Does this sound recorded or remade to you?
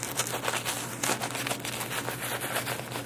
recorded